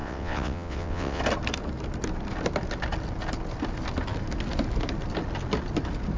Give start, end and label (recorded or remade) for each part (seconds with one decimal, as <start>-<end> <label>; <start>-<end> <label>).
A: 0.0-1.2 remade; 1.2-6.2 recorded